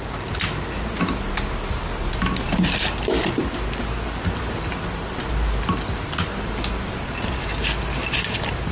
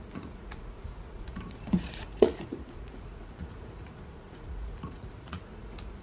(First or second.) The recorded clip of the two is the first